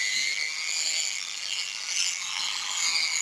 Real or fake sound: real